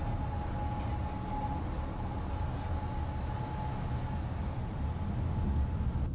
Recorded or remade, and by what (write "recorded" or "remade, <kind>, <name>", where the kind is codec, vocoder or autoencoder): recorded